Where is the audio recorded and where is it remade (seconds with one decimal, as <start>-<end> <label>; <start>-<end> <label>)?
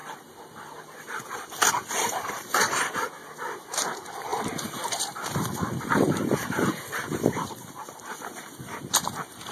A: 0.0-3.2 remade; 3.2-3.7 recorded; 3.7-9.5 remade